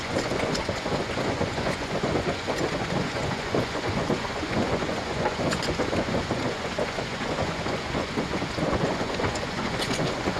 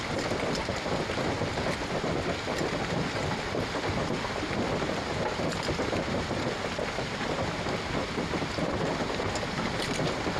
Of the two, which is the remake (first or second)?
first